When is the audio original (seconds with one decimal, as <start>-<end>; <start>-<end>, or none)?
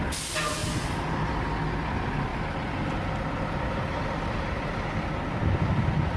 0.0-6.2